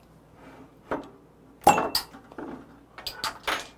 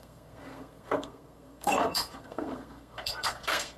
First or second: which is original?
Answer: first